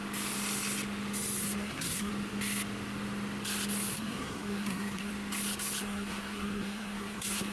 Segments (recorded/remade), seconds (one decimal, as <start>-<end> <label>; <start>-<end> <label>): 0.0-1.4 recorded; 1.4-2.1 remade; 2.1-3.9 recorded; 3.9-5.1 remade; 5.1-5.8 recorded; 5.8-7.5 remade